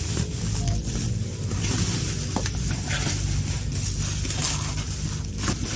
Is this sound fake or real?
real